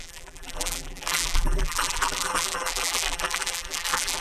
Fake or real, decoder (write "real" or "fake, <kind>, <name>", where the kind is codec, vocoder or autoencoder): fake, vocoder, BigVGAN v2